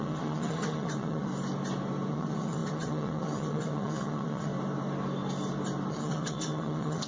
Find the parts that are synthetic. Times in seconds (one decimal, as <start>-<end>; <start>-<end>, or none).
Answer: 0.0-1.3; 2.1-4.5; 5.9-7.1